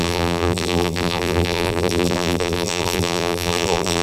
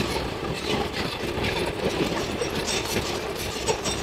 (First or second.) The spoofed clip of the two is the first